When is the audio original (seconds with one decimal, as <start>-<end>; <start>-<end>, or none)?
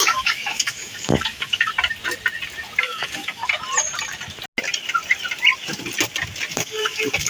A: 1.7-2.8; 3.4-6.5